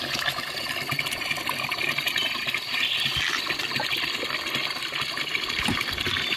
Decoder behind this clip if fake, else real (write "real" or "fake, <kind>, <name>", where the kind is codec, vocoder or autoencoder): real